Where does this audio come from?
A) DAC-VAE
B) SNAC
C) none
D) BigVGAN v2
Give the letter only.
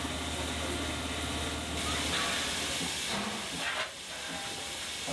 C